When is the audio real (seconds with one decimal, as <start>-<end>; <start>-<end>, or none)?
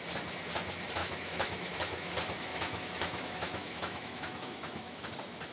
0.0-1.0; 2.1-2.5; 5.1-5.5